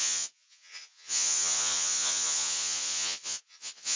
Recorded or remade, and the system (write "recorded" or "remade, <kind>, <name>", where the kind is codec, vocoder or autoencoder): remade, vocoder, Vocos